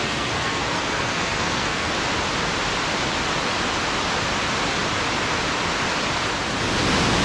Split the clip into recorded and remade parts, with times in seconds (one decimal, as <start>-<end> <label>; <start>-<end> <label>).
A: 0.0-1.9 remade; 1.9-7.2 recorded